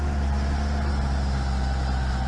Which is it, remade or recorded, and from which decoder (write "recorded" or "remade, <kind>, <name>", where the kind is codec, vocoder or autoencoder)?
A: recorded